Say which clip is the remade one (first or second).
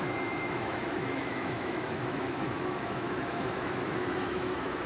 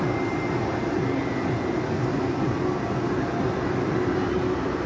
first